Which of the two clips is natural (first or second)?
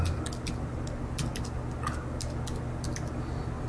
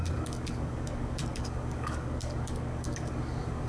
first